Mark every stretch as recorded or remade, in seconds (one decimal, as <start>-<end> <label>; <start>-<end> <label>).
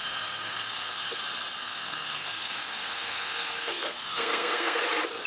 0.0-1.2 remade; 1.2-1.6 recorded; 1.6-4.8 remade; 4.8-5.3 recorded